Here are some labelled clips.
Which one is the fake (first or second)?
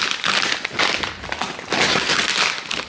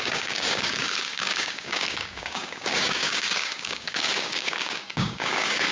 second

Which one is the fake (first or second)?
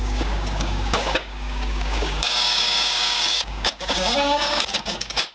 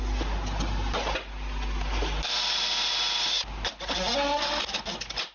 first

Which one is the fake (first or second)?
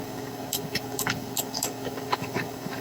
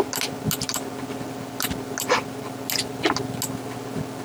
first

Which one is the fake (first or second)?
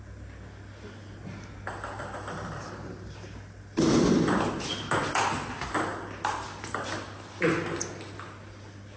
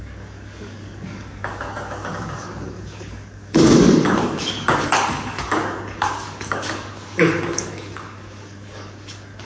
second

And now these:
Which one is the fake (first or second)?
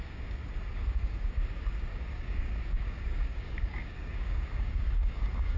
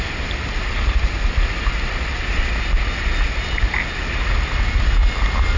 first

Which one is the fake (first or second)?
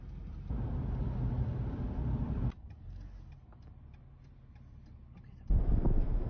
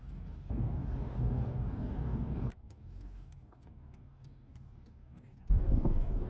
second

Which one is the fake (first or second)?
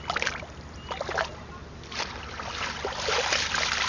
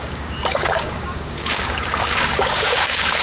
second